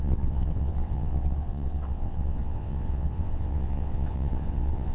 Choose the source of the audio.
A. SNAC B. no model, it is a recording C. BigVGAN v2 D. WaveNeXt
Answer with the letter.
D